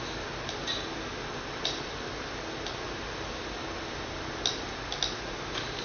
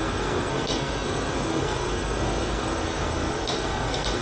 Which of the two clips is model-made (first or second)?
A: second